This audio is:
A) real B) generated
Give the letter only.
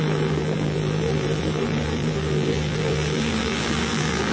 B